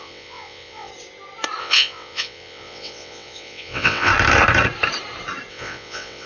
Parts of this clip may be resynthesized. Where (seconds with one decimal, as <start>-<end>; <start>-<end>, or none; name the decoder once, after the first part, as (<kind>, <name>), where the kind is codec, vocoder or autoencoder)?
0.0-0.9 (vocoder, WaveNeXt); 1.6-4.1; 5.5-6.3